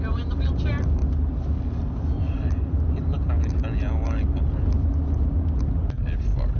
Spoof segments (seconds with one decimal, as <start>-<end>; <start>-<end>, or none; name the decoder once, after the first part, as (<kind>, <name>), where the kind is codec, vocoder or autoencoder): none